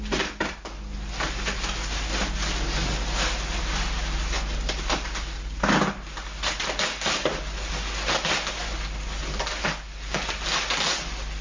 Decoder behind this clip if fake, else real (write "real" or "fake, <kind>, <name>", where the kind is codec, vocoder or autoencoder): real